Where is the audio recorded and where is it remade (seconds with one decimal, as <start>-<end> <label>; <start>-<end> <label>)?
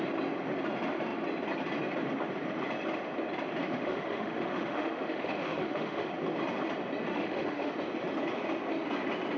0.0-3.6 recorded; 3.6-6.1 remade; 6.1-7.1 recorded; 7.1-7.7 remade; 7.7-9.4 recorded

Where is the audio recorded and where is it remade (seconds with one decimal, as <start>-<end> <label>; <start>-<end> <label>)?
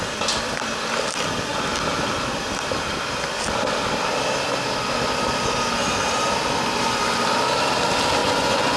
0.0-8.2 recorded; 8.2-8.8 remade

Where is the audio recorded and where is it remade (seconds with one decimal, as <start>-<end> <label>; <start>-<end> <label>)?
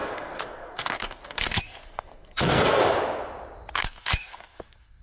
0.0-2.8 remade; 2.8-3.7 recorded; 3.7-5.0 remade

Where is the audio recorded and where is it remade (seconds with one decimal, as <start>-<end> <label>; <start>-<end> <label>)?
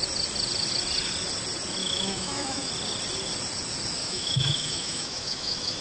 0.0-1.8 recorded; 1.8-2.7 remade; 2.7-4.0 recorded; 4.0-5.8 remade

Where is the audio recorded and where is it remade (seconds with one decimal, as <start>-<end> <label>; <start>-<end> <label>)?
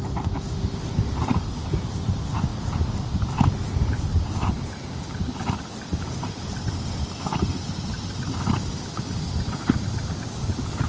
0.0-10.9 recorded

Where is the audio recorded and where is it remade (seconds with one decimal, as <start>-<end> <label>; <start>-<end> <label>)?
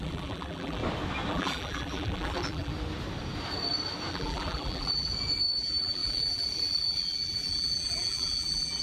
0.0-0.8 remade; 0.8-1.3 recorded; 1.3-2.7 remade; 2.7-4.1 recorded; 4.1-5.1 remade; 5.1-5.6 recorded; 5.6-8.8 remade